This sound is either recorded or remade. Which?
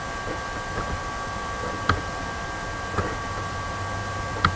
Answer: recorded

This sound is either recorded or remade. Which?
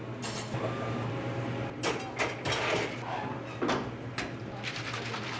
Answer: recorded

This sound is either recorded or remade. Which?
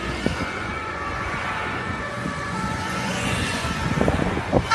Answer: remade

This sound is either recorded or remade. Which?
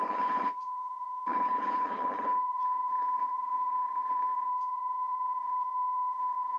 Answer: remade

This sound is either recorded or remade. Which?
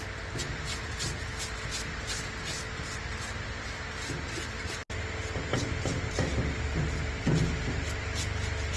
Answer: recorded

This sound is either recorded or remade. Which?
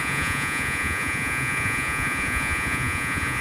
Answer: remade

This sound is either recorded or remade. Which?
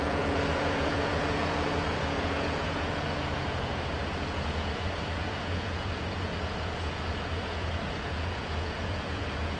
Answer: remade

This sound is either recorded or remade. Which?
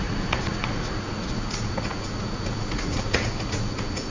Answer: remade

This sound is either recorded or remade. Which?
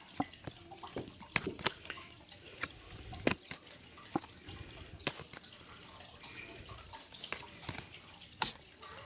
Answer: recorded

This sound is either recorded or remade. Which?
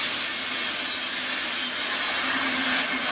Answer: recorded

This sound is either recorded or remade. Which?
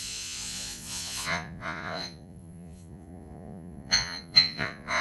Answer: remade